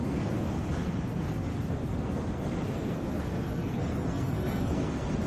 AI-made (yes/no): yes